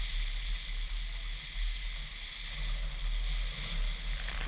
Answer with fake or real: real